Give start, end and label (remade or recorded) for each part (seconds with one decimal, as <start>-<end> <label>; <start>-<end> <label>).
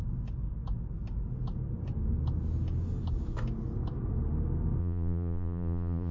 0.0-4.8 recorded; 4.8-6.1 remade